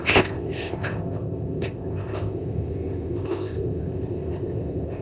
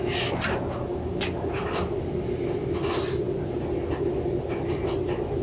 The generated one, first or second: first